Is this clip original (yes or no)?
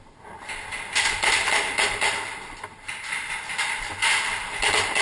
yes